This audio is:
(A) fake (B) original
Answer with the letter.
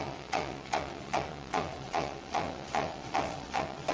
A